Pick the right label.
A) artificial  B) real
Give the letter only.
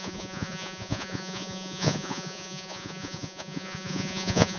A